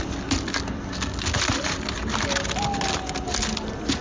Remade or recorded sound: recorded